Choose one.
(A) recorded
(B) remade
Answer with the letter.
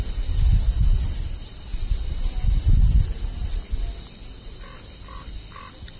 A